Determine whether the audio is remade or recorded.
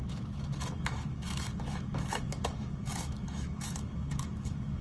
remade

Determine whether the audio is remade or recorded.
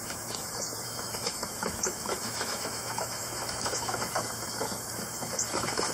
remade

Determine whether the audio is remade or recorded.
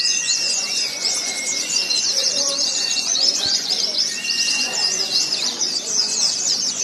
remade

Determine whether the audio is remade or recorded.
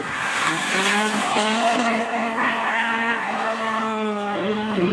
remade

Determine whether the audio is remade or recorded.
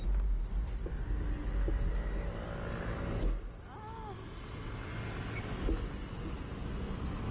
recorded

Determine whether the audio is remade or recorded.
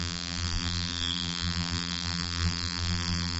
remade